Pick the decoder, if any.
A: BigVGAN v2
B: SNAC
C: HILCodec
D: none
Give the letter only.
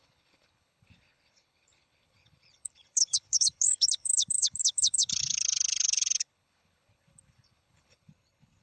C